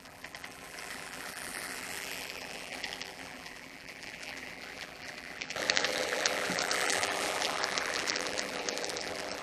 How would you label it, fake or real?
fake